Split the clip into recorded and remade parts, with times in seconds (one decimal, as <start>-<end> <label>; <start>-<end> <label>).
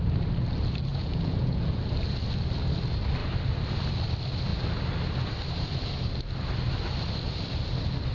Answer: 0.0-0.9 recorded; 0.9-1.8 remade; 1.8-8.1 recorded